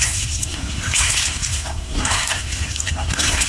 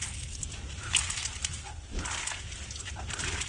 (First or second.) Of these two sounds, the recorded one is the second